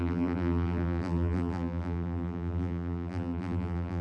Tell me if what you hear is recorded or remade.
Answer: remade